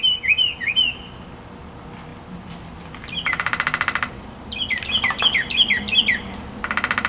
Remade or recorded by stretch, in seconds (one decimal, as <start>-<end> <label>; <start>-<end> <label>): 0.0-7.1 recorded